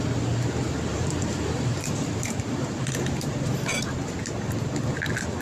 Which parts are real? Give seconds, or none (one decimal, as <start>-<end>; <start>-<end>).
0.0-0.9; 4.1-5.4